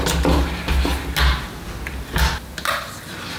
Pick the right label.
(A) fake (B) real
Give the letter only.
B